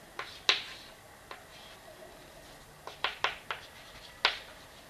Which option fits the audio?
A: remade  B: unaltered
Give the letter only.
B